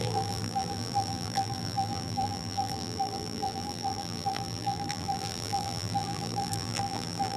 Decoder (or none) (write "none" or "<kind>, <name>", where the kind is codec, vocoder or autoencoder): vocoder, BigVGAN v2